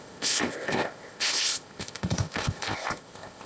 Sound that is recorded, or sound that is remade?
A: remade